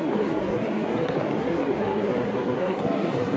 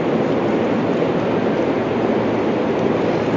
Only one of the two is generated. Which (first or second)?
first